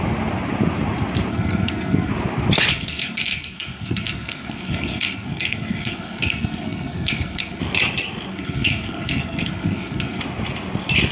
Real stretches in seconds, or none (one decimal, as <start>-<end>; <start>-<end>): 0.0-1.3; 2.1-2.7; 7.6-8.3; 10.2-11.1